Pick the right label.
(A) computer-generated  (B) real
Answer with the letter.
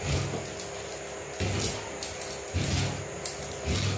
B